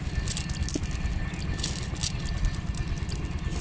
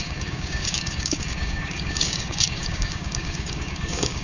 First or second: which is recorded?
first